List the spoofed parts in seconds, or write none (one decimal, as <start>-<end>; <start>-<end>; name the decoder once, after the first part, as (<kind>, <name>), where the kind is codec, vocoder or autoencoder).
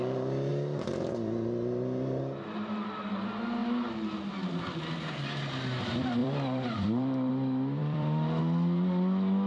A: 0.5-1.1 (vocoder, BigVGAN v2); 6.2-7.3; 7.8-8.4